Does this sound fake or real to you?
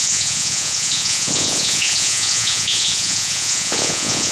fake